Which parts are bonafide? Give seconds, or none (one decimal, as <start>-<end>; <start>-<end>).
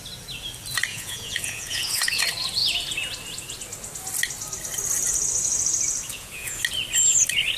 0.0-0.9; 2.2-6.1; 6.6-7.6